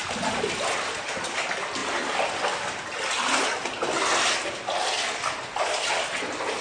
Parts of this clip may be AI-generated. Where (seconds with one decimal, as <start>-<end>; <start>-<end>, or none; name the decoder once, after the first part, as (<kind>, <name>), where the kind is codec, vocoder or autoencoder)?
none